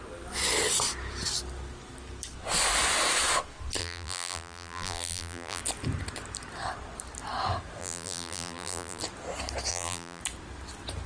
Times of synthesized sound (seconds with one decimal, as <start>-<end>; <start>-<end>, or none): 3.8-5.6; 7.8-9.0; 9.7-10.2